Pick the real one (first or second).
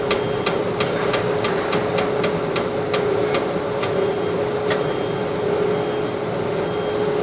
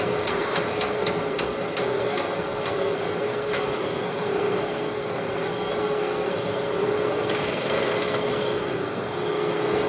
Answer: first